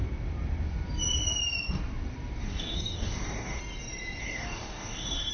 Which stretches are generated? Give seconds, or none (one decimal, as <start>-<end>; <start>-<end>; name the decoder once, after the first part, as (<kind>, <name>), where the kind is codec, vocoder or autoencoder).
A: 2.4-3.6 (codec, DAC); 4.2-5.3